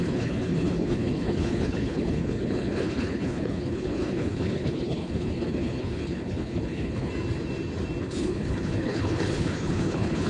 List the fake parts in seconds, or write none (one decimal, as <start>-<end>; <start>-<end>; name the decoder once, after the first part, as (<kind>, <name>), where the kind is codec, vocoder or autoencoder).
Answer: 0.0-7.1 (codec, HILCodec); 8.0-10.3